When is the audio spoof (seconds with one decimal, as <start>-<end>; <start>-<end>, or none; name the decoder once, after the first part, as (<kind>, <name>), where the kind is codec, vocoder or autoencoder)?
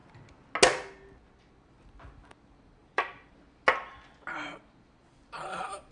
2.8-3.4 (vocoder, BigVGAN v2); 5.0-5.9